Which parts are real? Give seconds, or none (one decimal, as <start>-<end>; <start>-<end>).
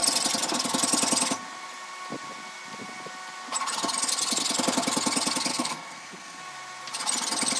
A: 0.0-5.5; 6.4-7.6